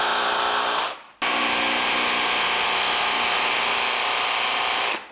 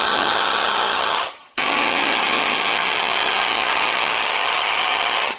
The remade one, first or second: second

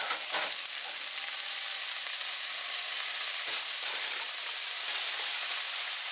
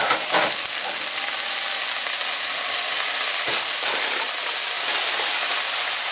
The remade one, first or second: first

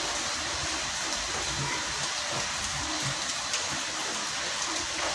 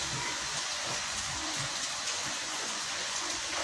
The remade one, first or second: second